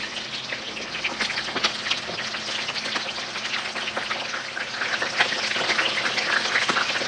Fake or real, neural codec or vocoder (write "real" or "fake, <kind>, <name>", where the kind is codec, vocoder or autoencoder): real